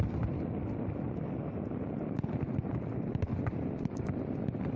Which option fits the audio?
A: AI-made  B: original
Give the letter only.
B